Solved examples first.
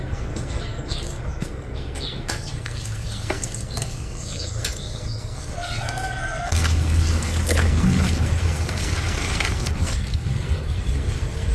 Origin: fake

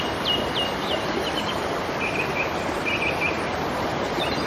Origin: real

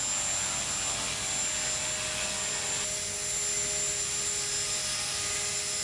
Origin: real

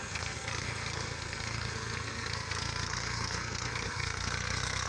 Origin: fake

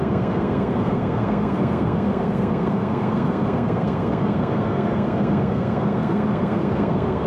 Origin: fake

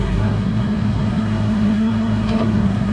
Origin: fake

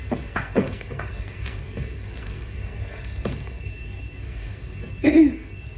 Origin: fake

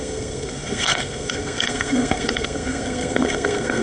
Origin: fake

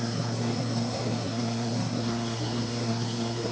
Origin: fake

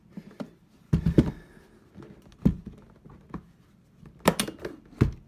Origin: real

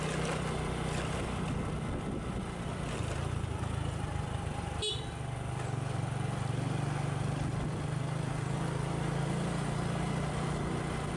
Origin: real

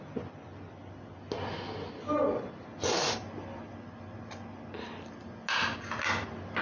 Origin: real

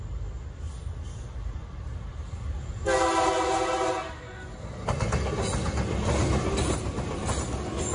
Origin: real